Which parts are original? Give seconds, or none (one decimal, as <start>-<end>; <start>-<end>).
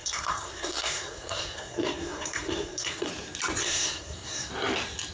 3.1-3.6; 4.5-5.1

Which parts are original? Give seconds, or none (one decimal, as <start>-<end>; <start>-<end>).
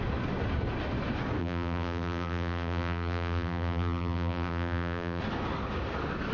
0.0-1.4; 5.2-6.3